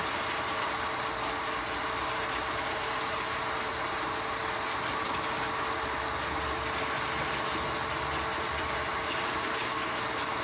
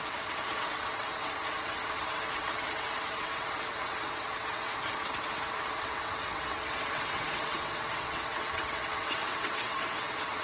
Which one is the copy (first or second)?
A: second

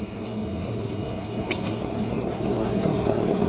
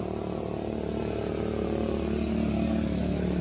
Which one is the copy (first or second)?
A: first